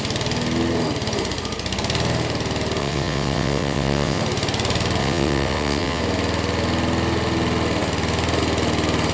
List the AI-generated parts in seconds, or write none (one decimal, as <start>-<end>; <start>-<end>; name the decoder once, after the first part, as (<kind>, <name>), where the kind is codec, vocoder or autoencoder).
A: 2.8-4.2 (vocoder, WaveNeXt); 5.0-6.0